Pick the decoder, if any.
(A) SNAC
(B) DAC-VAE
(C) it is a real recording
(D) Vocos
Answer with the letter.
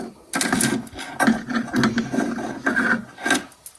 C